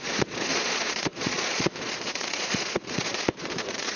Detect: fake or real fake